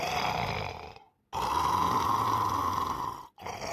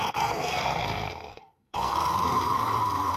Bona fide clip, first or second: first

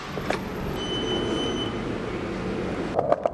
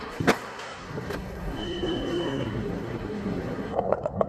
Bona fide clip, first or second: first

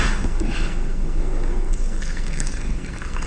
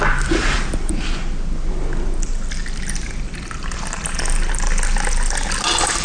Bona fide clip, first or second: second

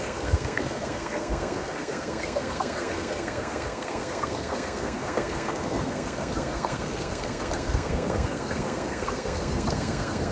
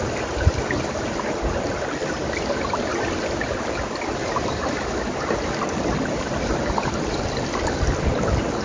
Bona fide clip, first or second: second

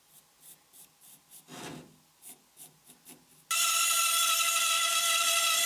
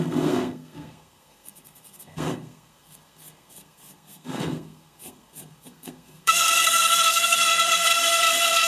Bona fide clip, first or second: first